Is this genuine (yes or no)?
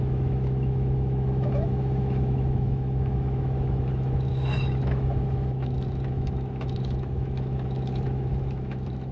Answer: no